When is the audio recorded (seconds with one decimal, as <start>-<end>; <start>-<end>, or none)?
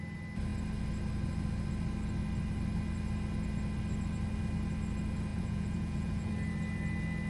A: 0.0-5.3; 6.3-7.3